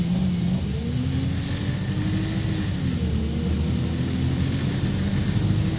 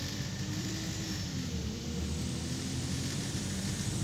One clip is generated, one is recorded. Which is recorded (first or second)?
first